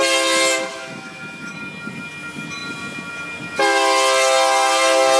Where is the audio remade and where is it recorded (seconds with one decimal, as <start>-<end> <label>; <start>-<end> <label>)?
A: 0.0-0.7 recorded; 0.7-1.5 remade; 1.5-5.2 recorded